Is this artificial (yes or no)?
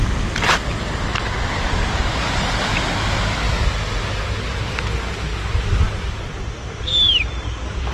no